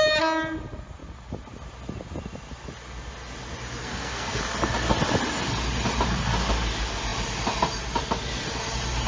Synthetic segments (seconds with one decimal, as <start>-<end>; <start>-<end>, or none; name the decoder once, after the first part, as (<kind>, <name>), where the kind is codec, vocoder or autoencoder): 3.8-4.4 (codec, SNAC)